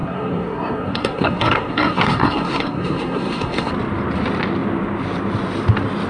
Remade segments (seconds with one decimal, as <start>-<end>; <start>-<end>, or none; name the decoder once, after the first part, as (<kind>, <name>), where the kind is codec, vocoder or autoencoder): 0.0-3.7 (codec, SNAC)